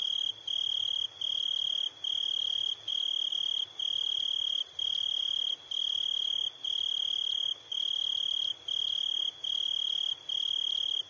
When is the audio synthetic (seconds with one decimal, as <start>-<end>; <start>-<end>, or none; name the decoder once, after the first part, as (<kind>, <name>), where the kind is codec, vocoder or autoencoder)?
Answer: none